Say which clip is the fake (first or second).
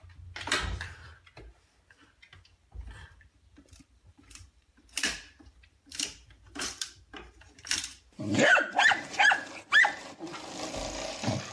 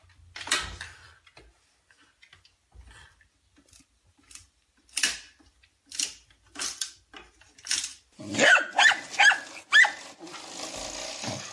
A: first